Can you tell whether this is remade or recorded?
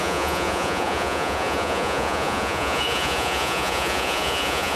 remade